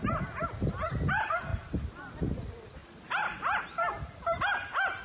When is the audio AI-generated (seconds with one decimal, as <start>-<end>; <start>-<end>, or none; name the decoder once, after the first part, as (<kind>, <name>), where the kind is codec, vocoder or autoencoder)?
2.8-3.6 (vocoder, BigVGAN v2)